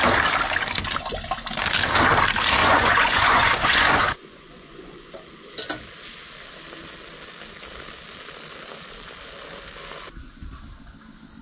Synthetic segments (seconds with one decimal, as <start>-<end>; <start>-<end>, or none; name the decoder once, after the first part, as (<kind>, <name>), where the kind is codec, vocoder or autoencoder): 2.6-5.1 (vocoder, Vocos)